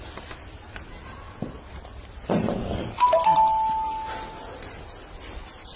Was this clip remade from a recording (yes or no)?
no